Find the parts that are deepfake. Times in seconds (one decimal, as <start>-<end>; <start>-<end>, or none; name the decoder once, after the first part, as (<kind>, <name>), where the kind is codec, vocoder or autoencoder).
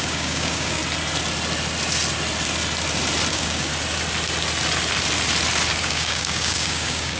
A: 0.0-0.8 (codec, DAC); 3.3-3.7; 5.8-7.2